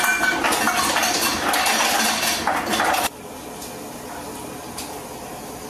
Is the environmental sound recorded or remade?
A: recorded